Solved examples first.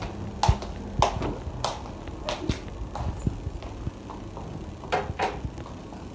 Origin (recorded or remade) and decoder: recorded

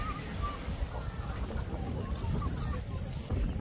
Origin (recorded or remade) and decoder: recorded